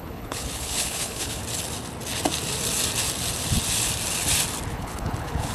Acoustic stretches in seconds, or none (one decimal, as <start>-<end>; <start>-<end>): 1.4-4.7